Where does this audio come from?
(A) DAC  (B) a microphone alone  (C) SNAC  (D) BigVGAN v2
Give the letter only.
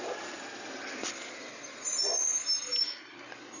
B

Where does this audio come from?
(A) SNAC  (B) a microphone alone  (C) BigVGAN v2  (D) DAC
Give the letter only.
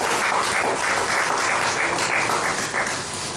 B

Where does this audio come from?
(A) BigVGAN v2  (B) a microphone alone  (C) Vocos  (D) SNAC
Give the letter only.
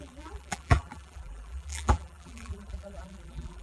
A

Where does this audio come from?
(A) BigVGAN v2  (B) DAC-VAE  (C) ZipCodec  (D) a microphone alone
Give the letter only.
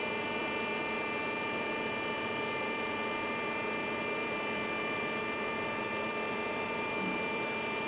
A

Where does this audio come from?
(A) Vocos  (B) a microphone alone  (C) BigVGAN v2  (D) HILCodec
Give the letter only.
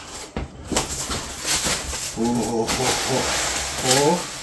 B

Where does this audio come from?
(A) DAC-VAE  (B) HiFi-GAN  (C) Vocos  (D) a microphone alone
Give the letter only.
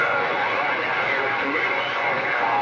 C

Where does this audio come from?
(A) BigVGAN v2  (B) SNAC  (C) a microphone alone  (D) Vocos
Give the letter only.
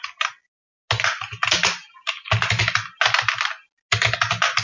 C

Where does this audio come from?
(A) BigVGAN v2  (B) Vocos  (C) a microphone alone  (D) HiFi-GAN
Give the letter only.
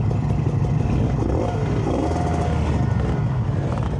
C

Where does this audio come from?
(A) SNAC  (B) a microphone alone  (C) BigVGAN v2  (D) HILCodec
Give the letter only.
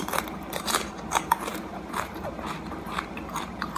C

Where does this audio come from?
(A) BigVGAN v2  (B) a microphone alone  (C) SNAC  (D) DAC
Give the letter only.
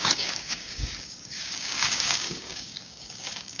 D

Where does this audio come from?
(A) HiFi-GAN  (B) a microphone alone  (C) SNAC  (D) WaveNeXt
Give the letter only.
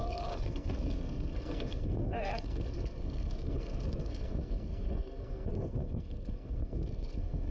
C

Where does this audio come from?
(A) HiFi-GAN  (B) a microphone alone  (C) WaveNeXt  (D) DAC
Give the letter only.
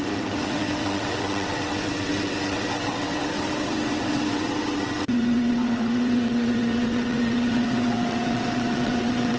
C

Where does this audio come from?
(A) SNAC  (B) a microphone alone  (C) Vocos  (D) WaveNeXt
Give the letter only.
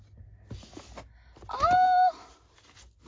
B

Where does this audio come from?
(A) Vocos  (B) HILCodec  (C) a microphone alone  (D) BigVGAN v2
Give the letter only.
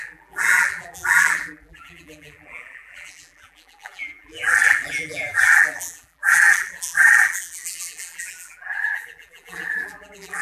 D